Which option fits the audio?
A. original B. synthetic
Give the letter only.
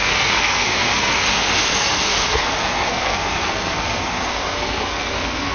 B